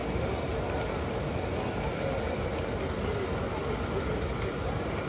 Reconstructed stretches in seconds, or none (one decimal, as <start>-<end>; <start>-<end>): none

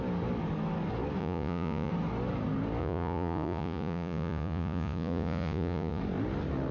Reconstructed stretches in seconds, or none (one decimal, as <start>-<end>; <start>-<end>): 1.2-1.9; 2.8-6.0

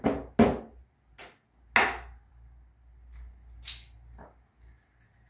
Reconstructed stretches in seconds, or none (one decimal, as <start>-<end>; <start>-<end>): none

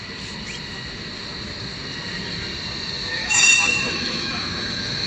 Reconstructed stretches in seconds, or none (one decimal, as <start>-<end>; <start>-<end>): 3.2-5.1